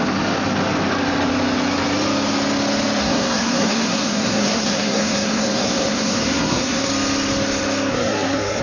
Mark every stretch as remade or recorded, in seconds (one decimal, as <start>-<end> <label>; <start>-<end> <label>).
0.0-3.0 recorded; 3.0-6.9 remade; 6.9-7.9 recorded; 7.9-8.6 remade